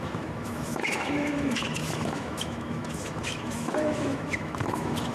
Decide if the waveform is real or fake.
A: fake